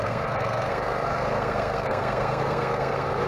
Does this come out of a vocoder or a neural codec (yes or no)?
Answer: yes